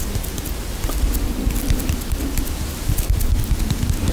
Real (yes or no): yes